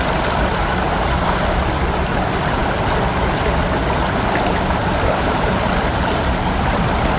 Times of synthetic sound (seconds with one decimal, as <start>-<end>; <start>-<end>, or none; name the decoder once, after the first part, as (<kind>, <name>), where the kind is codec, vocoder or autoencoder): none